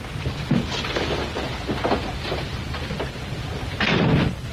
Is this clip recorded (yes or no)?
yes